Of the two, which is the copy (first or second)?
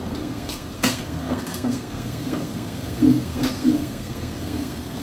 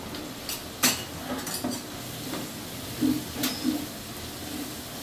first